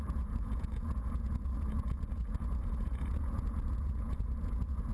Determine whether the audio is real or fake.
fake